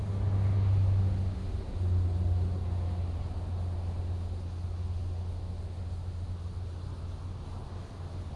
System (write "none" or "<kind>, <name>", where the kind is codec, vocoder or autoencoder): none